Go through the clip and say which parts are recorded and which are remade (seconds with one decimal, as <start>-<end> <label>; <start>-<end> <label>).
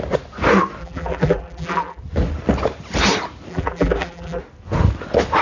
0.0-0.8 recorded; 0.8-2.0 remade; 2.0-3.5 recorded; 3.5-4.4 remade; 4.4-5.4 recorded